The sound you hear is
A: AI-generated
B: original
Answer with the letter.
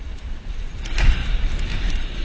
A